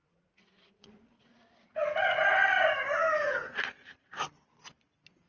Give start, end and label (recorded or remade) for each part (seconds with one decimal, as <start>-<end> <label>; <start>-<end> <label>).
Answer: 0.0-1.9 remade; 1.9-5.3 recorded